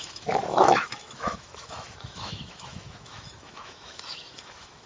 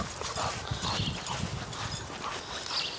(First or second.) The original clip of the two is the second